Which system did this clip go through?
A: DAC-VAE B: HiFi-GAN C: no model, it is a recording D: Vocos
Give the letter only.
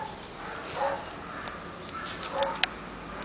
C